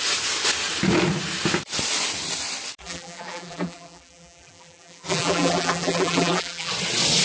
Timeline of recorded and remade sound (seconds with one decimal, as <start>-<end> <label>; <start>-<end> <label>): 0.0-2.8 recorded; 2.8-6.7 remade; 6.7-7.2 recorded